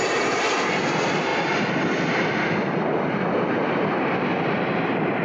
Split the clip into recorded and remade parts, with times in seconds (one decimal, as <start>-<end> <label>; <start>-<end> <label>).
0.0-5.2 recorded